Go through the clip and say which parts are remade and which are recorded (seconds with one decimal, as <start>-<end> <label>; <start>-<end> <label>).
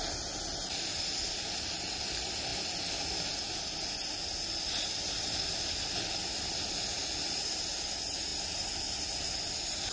0.0-9.9 recorded